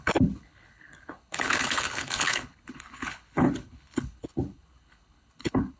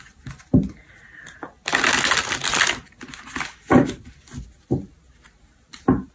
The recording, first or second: second